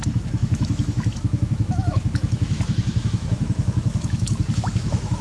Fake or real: fake